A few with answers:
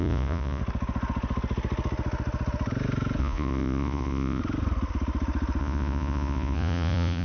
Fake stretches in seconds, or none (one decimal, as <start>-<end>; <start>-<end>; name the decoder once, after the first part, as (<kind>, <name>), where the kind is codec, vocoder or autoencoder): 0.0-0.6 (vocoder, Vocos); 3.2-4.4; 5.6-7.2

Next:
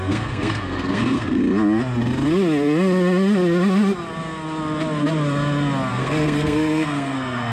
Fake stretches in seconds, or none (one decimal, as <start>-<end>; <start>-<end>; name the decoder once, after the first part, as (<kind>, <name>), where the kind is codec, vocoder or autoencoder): 0.0-1.4 (codec, SNAC); 5.9-7.5

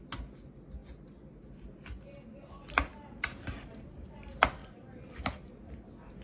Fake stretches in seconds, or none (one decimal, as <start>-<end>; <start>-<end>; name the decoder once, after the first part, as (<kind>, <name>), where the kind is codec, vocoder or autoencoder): none

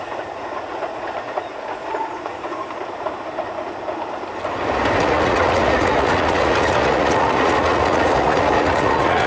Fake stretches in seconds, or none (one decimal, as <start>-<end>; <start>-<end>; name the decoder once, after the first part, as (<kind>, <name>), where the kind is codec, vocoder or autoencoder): 0.0-2.6 (vocoder, Vocos); 5.0-9.3